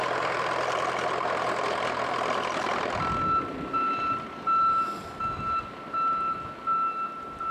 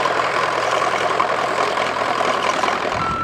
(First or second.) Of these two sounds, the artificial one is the second